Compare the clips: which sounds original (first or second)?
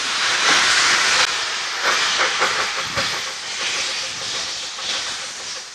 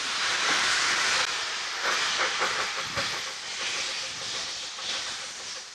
first